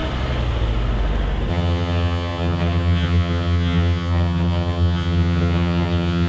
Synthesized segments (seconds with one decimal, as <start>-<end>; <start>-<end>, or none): 1.5-6.3

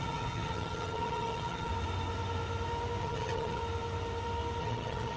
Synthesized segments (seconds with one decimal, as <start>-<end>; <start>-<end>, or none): 0.0-1.7; 3.0-3.6; 4.6-5.2

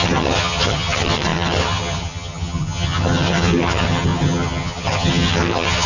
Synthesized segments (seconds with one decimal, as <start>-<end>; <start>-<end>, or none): 0.0-5.9

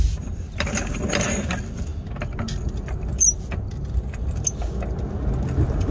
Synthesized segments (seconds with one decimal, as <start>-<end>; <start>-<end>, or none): none

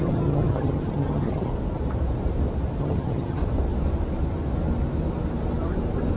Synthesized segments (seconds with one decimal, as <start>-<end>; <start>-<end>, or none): 0.0-1.5; 2.8-3.4

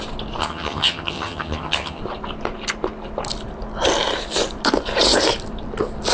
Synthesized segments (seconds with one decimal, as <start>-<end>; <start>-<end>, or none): 0.4-2.0

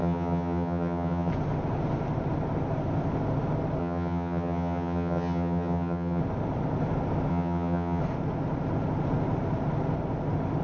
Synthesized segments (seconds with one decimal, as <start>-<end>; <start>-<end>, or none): 0.0-1.3; 3.8-6.2; 7.3-8.0